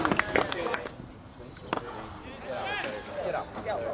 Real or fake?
real